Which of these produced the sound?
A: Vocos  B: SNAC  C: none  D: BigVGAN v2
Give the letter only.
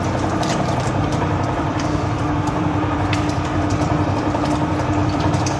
D